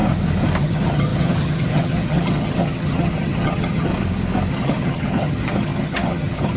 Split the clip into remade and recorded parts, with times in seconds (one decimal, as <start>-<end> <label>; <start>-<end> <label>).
0.0-0.6 recorded; 0.6-3.9 remade; 3.9-4.5 recorded; 4.5-6.6 remade